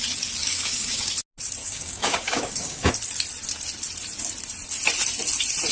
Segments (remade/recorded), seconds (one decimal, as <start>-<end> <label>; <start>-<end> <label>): 0.0-0.4 recorded; 0.4-1.1 remade; 1.1-1.6 recorded; 1.6-2.9 remade; 2.9-5.7 recorded